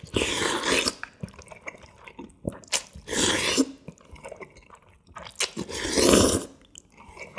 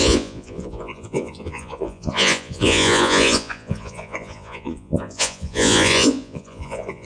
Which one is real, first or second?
first